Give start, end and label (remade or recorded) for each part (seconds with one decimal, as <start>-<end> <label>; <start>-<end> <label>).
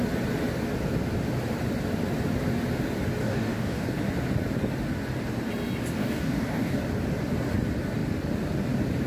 0.0-3.2 recorded; 3.2-4.0 remade; 4.0-6.0 recorded; 6.0-6.8 remade; 6.8-9.1 recorded